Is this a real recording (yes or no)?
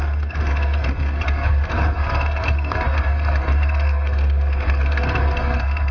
no